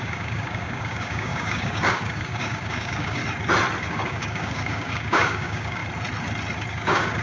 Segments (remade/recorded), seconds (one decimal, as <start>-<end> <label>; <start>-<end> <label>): 0.0-3.2 remade; 3.2-3.8 recorded; 3.8-5.8 remade; 5.8-6.7 recorded; 6.7-7.2 remade